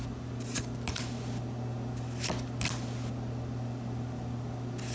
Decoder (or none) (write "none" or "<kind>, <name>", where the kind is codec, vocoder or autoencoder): none